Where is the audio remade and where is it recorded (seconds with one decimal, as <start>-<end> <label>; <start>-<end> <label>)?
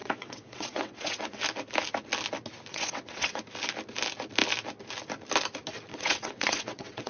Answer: 0.0-1.4 remade; 1.4-2.7 recorded; 2.7-3.4 remade; 3.4-5.9 recorded; 5.9-7.1 remade